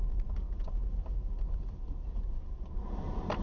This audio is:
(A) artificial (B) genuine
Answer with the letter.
B